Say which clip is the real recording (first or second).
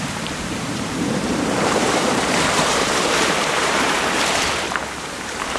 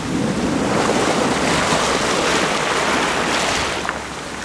second